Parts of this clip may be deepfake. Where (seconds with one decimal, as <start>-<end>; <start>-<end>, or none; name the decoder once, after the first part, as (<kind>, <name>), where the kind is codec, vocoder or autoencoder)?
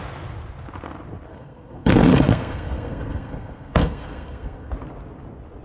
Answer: 1.3-4.7 (codec, SNAC)